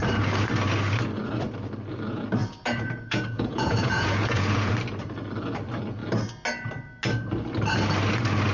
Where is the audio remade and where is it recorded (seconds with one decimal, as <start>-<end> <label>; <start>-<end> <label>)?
0.0-2.4 recorded; 2.4-4.7 remade; 4.7-8.5 recorded